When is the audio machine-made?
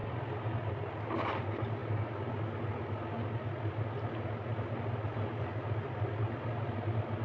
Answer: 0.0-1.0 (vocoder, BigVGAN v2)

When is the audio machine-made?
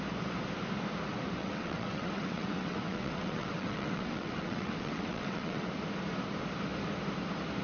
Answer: 1.4-5.7 (vocoder, WaveNeXt)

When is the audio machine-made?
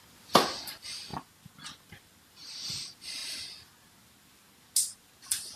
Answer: none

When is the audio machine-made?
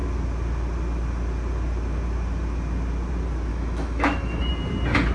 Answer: 3.5-4.5 (autoencoder, DAC-VAE)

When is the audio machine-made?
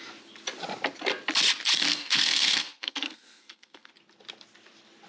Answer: 1.9-3.9 (codec, SNAC)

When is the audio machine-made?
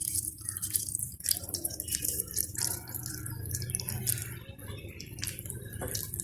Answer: 0.0-3.7 (vocoder, BigVGAN v2)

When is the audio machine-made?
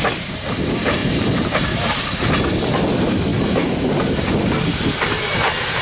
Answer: 1.0-1.9 (vocoder, BigVGAN v2); 3.3-3.9